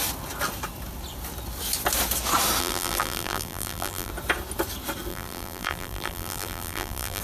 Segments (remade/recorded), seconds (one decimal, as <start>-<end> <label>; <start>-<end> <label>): 0.0-2.6 recorded; 2.6-4.1 remade; 4.1-5.1 recorded; 5.1-7.2 remade